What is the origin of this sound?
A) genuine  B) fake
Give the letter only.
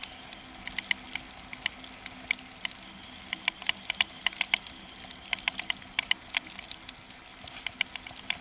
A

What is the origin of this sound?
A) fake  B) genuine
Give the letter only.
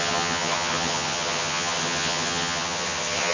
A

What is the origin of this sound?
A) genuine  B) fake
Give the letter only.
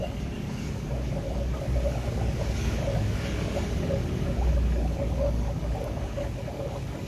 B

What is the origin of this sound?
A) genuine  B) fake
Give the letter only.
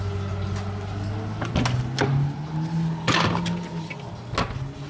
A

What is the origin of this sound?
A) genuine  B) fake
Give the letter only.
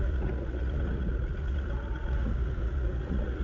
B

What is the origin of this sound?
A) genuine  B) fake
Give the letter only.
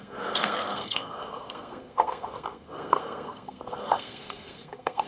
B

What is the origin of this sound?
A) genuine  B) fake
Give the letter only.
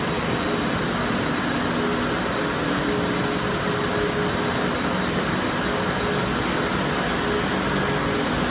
A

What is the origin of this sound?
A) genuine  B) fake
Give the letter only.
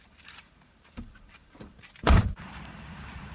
B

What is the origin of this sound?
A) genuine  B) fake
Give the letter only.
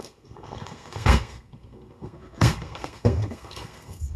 B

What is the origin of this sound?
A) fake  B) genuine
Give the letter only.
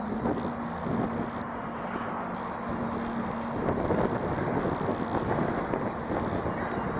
B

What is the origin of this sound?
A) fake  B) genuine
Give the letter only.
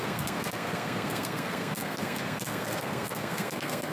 A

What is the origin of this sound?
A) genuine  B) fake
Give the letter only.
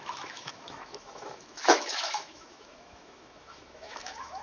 B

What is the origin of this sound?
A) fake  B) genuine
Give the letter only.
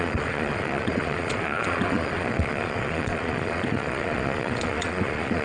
A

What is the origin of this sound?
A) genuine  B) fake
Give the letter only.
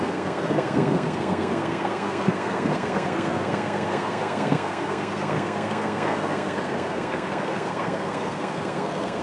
B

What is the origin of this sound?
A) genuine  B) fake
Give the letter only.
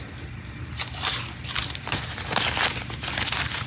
A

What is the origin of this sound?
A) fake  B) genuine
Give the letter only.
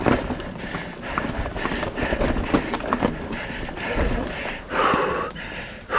B